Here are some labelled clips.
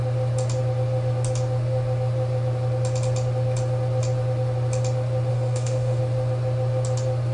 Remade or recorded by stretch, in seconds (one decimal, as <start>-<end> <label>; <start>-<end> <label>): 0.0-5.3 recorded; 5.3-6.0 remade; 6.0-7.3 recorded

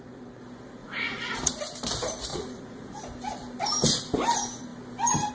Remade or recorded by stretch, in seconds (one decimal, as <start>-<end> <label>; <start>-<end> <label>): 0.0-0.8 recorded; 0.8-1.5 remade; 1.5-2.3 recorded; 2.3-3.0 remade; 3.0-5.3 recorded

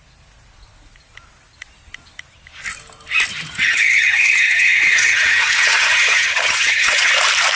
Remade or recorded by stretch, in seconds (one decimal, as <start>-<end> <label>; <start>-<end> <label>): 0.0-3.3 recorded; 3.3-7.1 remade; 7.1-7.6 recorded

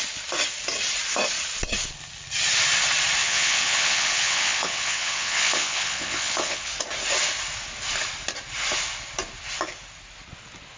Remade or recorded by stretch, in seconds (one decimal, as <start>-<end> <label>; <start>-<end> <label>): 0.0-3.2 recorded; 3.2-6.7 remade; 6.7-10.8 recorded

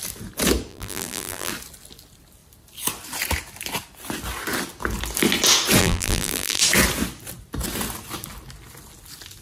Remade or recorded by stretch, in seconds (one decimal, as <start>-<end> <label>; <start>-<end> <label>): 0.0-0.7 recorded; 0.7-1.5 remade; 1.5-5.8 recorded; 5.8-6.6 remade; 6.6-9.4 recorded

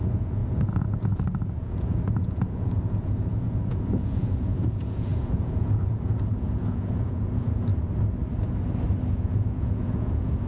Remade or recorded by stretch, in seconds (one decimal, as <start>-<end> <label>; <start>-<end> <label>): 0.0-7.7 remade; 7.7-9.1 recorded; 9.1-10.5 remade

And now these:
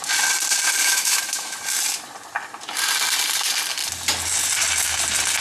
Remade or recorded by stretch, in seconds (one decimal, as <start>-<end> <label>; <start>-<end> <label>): 0.0-0.8 recorded; 0.8-1.6 remade; 1.6-5.4 recorded

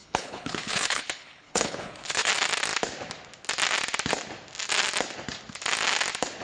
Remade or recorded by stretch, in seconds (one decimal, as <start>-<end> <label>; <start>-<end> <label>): 0.0-2.3 remade; 2.3-6.4 recorded